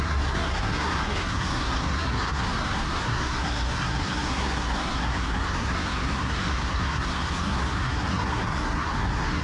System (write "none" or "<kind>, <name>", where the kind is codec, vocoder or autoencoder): codec, SNAC